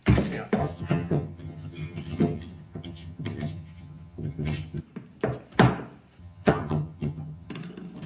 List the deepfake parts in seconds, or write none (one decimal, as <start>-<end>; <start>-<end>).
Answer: 0.6-4.8; 6.2-7.5